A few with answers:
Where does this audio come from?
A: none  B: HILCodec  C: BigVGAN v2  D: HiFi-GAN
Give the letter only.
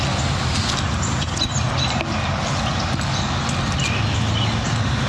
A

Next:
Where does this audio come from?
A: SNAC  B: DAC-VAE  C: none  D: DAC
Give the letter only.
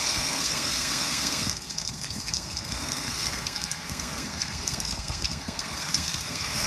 A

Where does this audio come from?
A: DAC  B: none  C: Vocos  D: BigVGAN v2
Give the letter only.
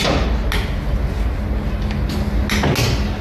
B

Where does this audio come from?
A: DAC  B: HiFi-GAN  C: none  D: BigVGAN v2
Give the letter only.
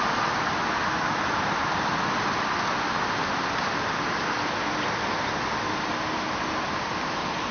C